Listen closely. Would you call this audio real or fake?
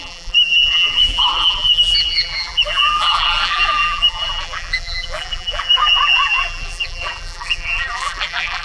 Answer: fake